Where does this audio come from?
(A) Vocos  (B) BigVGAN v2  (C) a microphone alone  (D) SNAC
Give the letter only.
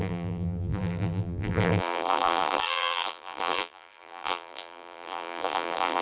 B